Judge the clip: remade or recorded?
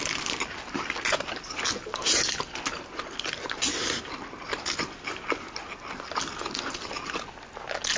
recorded